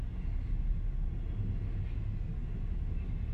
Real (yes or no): yes